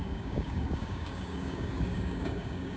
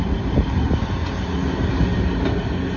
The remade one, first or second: first